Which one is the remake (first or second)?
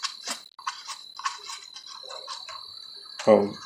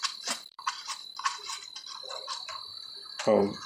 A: second